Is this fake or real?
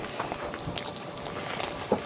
real